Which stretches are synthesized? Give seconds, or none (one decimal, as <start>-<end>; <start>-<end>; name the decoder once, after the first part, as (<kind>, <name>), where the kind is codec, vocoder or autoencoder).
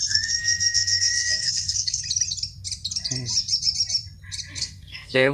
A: 0.0-2.0 (codec, SNAC); 4.6-5.3